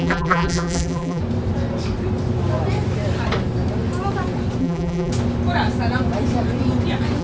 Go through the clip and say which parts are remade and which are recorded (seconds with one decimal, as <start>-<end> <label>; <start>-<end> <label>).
0.0-1.2 remade; 1.2-4.6 recorded; 4.6-5.1 remade; 5.1-7.2 recorded